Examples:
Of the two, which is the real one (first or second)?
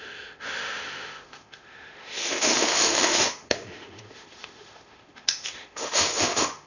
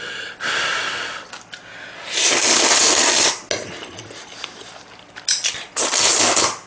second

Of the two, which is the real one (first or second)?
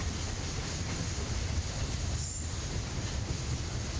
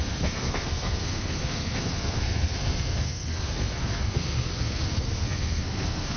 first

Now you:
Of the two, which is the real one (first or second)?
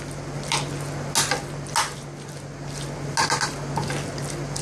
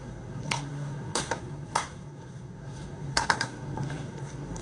first